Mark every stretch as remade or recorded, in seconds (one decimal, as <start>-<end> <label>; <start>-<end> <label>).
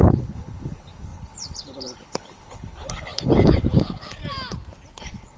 0.0-4.2 remade; 4.2-5.0 recorded; 5.0-5.4 remade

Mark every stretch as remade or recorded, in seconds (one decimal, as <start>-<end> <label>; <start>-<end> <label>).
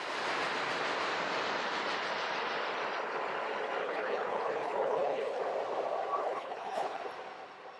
0.0-3.8 recorded; 3.8-5.4 remade; 5.4-6.2 recorded; 6.2-7.0 remade; 7.0-7.8 recorded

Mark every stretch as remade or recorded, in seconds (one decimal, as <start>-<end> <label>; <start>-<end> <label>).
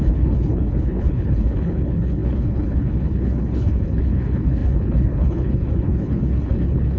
0.0-7.0 remade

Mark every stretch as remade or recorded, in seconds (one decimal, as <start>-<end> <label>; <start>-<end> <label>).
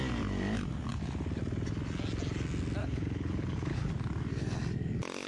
0.0-2.8 recorded; 2.8-3.9 remade; 3.9-5.3 recorded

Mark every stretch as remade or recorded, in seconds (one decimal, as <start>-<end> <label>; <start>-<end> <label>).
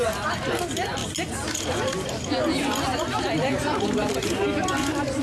0.0-5.2 recorded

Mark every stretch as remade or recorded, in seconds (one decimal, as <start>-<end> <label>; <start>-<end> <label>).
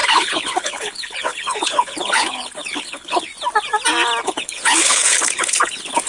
0.0-3.3 remade; 3.3-4.2 recorded; 4.2-6.1 remade